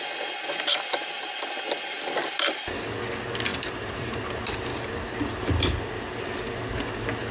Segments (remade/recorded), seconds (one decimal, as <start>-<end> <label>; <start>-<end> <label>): 0.0-3.5 recorded; 3.5-4.2 remade; 4.2-4.7 recorded; 4.7-5.4 remade; 5.4-7.3 recorded